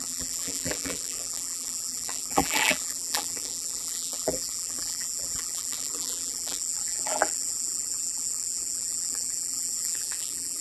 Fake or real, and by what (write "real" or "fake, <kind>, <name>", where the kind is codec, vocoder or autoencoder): fake, vocoder, BigVGAN v2